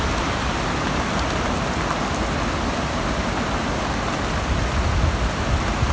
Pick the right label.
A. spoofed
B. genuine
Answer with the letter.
B